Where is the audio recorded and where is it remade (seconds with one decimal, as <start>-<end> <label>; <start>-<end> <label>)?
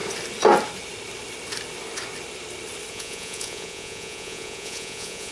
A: 0.0-2.9 recorded; 2.9-5.3 remade